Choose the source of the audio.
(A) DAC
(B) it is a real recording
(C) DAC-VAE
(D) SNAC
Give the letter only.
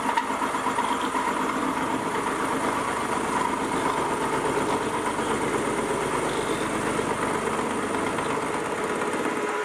B